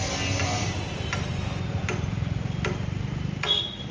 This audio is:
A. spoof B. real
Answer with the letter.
B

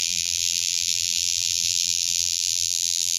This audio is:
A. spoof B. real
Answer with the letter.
A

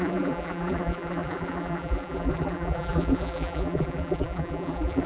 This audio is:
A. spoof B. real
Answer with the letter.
A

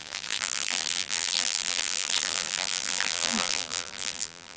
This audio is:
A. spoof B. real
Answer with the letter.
A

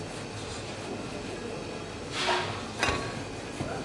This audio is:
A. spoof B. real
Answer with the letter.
B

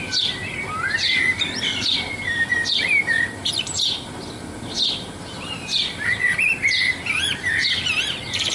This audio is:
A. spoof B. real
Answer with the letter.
A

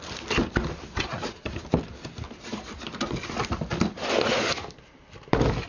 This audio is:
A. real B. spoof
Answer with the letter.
B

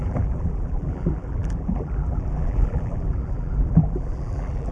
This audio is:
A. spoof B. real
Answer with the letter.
A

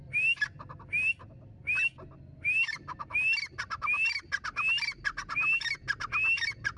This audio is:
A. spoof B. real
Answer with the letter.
B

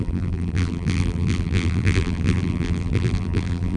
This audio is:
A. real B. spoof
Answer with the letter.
B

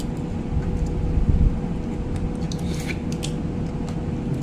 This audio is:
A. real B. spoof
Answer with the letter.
A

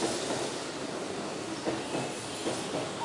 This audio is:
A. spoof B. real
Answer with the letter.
B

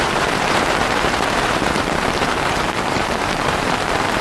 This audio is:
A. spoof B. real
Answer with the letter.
A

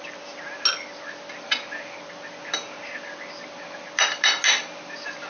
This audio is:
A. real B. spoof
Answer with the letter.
A